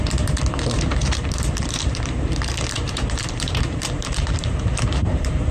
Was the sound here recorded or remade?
remade